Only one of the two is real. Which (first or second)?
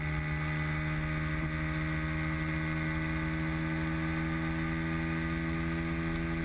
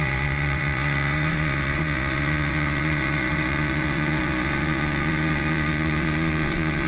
first